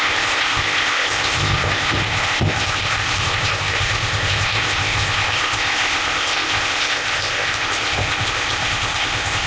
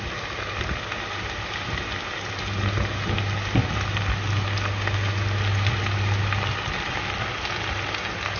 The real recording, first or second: second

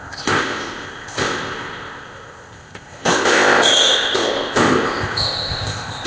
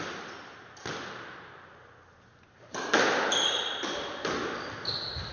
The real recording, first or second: second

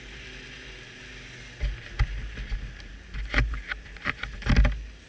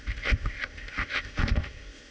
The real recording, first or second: first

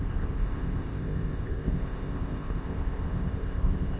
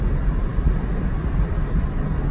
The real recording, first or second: second